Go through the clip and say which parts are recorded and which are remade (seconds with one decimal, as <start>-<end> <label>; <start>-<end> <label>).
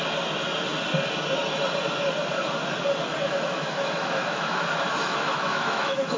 0.0-3.2 recorded; 3.2-6.2 remade